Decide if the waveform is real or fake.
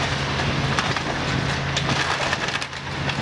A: real